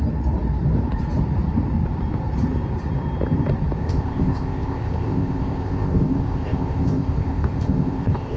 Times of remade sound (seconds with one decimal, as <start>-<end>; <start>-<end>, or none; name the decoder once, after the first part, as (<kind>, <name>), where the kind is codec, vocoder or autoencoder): 3.8-8.4 (codec, ZipCodec)